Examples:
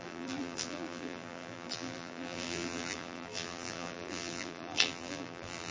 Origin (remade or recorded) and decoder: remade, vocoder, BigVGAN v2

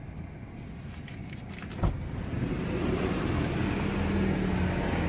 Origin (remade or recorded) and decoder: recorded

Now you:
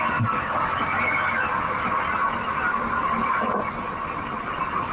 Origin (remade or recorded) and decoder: recorded